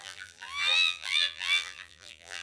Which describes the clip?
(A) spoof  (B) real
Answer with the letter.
A